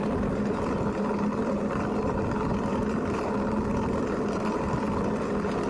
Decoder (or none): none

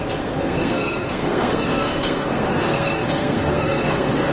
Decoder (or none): codec, SNAC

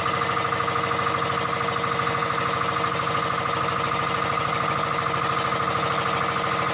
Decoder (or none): none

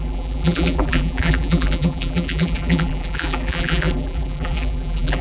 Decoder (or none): vocoder, BigVGAN v2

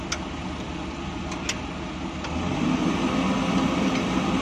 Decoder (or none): none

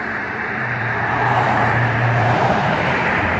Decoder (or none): vocoder, BigVGAN v2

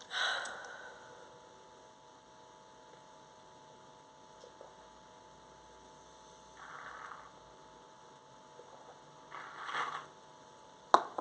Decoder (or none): none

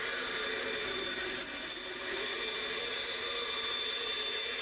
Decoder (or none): none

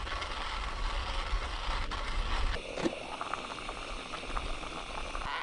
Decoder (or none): none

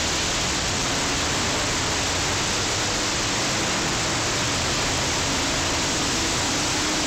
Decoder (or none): none